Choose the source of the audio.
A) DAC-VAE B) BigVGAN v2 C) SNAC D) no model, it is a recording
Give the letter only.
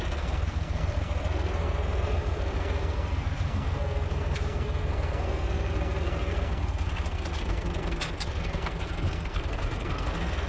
C